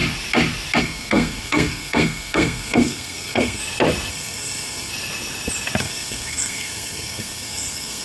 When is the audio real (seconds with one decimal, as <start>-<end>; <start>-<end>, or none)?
0.0-0.8; 3.6-4.1; 4.9-5.8